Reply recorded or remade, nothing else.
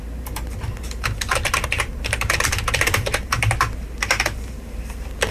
remade